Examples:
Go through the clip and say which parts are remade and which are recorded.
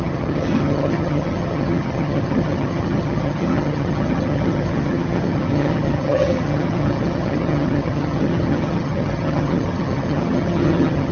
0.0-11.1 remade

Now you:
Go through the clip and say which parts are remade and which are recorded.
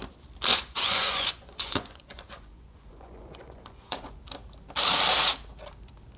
0.0-0.5 recorded; 0.5-4.2 remade; 4.2-6.2 recorded